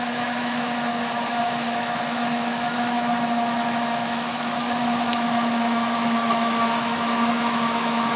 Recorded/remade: remade